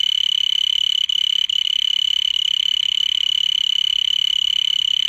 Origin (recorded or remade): recorded